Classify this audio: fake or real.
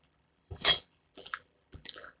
fake